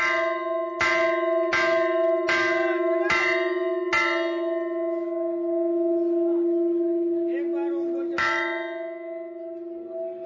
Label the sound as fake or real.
real